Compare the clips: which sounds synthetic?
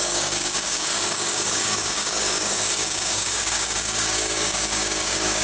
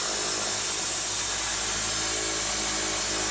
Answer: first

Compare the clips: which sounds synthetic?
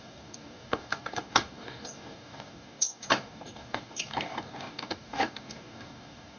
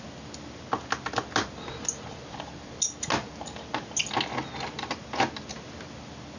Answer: first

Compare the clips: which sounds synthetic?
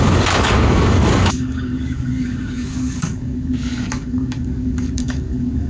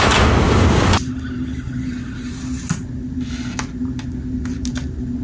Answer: first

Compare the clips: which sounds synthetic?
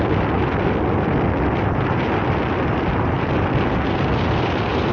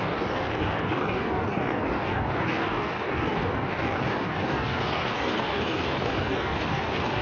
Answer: second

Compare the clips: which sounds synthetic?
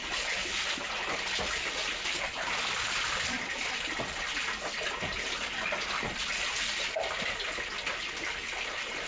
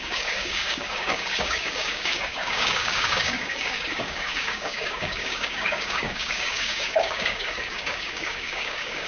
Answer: second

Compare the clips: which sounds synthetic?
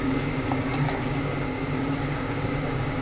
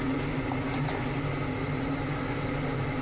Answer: first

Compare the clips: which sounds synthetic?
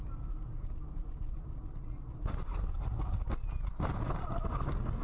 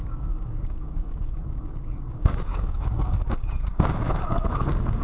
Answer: second